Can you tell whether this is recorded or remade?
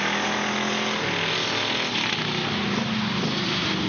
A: recorded